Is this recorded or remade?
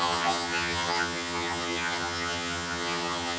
remade